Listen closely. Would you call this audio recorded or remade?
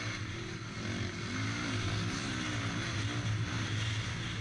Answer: recorded